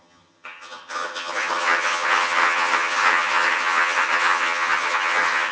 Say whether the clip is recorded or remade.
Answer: remade